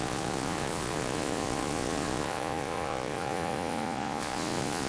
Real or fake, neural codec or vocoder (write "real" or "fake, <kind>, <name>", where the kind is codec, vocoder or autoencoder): fake, vocoder, Vocos